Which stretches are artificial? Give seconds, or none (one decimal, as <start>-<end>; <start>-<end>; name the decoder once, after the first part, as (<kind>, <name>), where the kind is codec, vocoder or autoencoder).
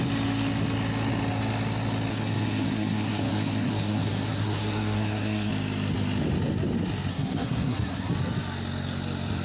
2.1-5.5 (codec, SNAC); 7.1-8.1